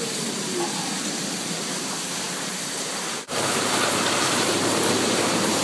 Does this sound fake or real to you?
fake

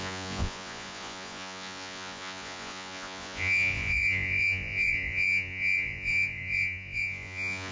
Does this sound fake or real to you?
fake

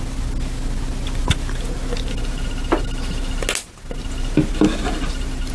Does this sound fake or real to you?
real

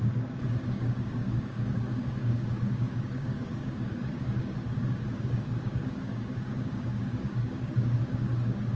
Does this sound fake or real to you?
fake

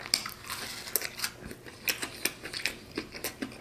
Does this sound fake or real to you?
real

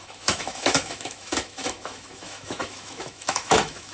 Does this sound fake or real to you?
fake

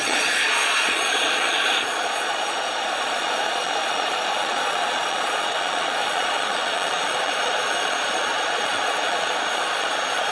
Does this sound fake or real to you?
fake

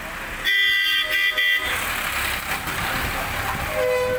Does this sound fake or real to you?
real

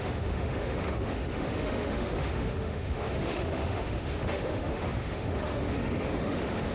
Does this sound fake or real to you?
fake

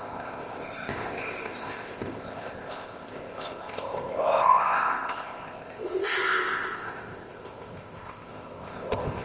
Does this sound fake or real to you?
fake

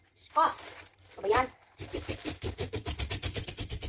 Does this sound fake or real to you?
real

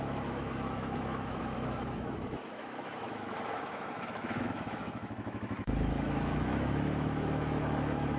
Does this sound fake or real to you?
fake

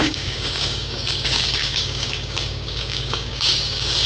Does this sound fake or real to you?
fake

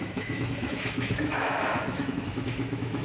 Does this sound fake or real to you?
fake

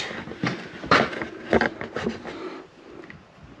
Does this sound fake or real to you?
real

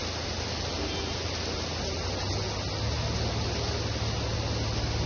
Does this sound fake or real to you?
real